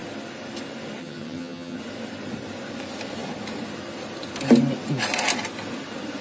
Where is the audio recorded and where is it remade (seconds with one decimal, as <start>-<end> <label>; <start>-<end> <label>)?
0.0-1.0 recorded; 1.0-1.8 remade; 1.8-6.2 recorded